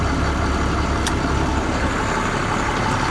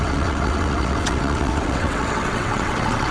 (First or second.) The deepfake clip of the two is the second